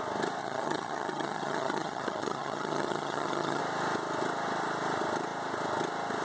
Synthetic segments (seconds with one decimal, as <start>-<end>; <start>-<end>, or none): 0.4-3.6